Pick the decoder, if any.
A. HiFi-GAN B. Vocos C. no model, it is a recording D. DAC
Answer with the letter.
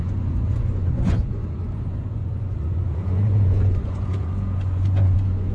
B